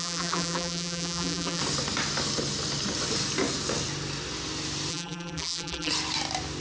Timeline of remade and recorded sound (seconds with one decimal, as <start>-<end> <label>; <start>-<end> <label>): 0.0-1.6 remade; 1.6-4.9 recorded; 4.9-5.9 remade; 5.9-6.6 recorded